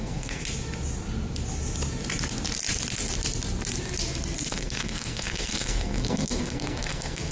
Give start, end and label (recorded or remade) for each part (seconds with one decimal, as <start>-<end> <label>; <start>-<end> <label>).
0.0-0.4 remade; 0.4-4.5 recorded; 4.5-7.3 remade